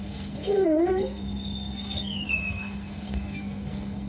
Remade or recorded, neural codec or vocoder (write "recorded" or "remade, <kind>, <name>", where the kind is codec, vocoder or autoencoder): remade, codec, SNAC